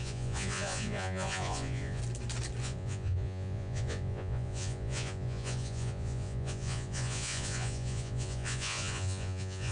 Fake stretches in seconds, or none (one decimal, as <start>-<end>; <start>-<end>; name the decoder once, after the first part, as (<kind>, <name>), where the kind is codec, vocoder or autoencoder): 0.0-2.0 (vocoder, Vocos); 2.6-9.7